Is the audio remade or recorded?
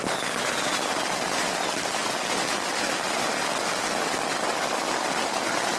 recorded